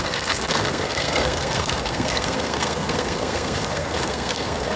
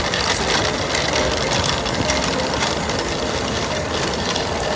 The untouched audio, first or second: second